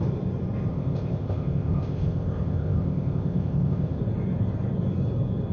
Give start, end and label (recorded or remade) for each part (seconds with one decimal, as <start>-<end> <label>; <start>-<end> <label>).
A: 0.0-0.7 recorded; 0.7-4.0 remade; 4.0-5.5 recorded